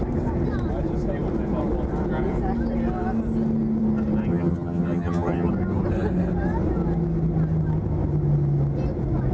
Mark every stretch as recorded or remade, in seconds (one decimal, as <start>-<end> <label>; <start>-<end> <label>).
0.0-4.3 recorded; 4.3-5.5 remade; 5.5-9.3 recorded